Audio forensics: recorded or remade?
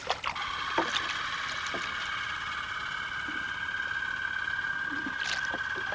recorded